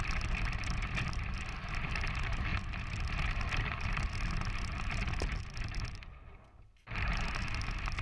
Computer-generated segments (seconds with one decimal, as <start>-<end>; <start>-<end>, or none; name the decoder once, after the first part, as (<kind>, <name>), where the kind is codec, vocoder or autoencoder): 2.5-4.5 (vocoder, BigVGAN v2)